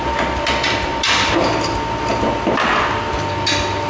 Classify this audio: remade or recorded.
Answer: recorded